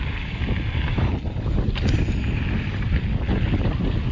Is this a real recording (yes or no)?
yes